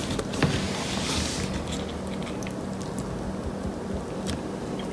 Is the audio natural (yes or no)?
yes